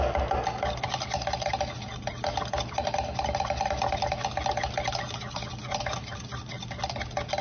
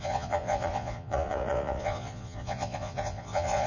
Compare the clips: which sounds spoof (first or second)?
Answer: second